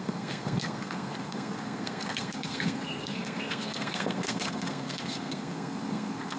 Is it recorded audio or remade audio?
remade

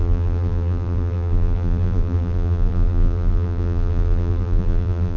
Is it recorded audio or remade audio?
remade